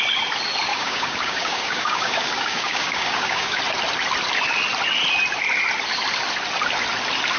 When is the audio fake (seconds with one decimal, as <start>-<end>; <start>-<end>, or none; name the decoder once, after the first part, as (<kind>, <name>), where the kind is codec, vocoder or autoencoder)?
0.7-3.6 (codec, DAC)